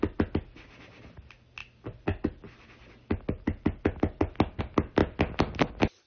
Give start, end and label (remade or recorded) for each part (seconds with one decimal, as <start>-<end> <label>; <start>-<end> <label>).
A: 0.0-6.1 recorded

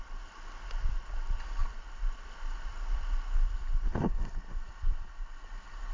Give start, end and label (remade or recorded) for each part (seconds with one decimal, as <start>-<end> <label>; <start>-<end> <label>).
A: 0.0-5.9 recorded

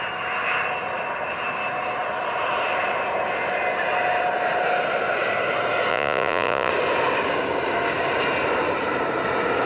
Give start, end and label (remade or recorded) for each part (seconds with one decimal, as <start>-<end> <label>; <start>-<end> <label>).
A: 0.0-5.9 recorded; 5.9-6.7 remade; 6.7-9.7 recorded

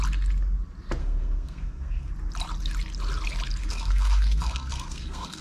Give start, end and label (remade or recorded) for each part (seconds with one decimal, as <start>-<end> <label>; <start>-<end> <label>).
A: 0.0-1.0 recorded; 1.0-2.1 remade; 2.1-3.6 recorded; 3.6-5.4 remade

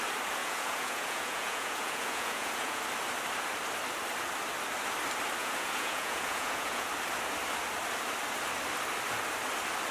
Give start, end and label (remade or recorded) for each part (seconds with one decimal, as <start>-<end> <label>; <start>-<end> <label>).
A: 0.0-0.4 recorded; 0.4-2.8 remade; 2.8-5.4 recorded; 5.4-6.9 remade; 6.9-9.9 recorded

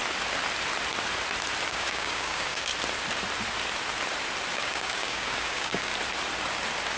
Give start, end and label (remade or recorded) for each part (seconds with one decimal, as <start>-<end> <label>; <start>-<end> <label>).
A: 0.0-1.7 recorded; 1.7-2.7 remade; 2.7-4.5 recorded; 4.5-5.9 remade; 5.9-7.0 recorded

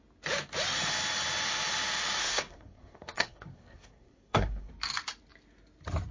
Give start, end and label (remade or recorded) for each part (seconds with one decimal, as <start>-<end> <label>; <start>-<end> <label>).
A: 0.0-2.2 recorded; 2.2-4.7 remade; 4.7-6.1 recorded

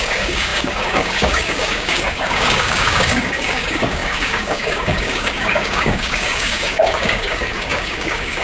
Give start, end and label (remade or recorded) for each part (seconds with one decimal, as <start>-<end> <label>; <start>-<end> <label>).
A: 0.0-8.4 remade